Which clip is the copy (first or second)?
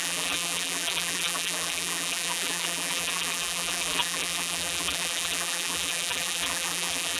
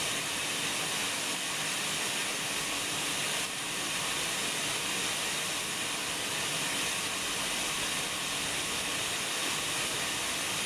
first